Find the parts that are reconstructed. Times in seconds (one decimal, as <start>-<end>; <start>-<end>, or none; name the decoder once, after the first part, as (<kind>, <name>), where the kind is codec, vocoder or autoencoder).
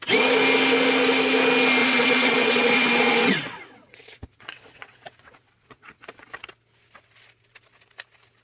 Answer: 1.8-6.3 (vocoder, WaveNeXt)